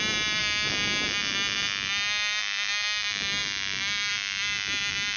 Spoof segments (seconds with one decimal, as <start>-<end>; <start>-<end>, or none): none